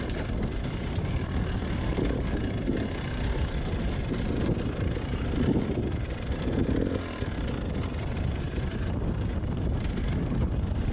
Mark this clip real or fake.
real